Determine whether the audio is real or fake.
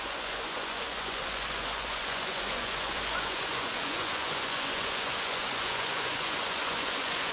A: fake